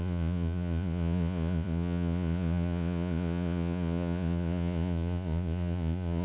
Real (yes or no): no